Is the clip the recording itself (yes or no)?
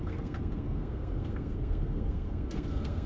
no